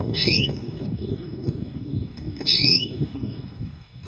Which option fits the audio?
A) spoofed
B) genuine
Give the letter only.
A